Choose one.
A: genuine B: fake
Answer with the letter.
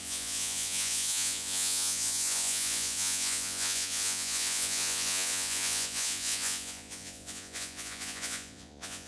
B